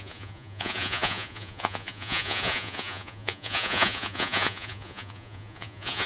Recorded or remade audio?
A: remade